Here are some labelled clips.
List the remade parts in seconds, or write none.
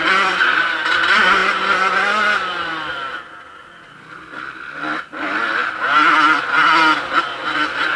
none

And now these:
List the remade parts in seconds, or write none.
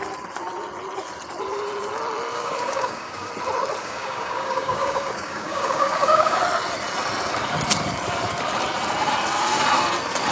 2.3-3.3; 3.8-6.4